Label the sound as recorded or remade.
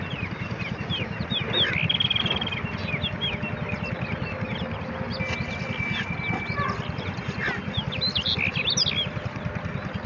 recorded